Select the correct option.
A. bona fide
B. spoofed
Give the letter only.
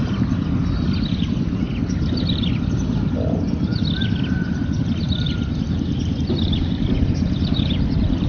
A